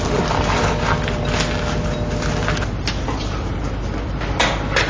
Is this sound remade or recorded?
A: recorded